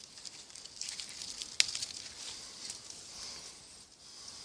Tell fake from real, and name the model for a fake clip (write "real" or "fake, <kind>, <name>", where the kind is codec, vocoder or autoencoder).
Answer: real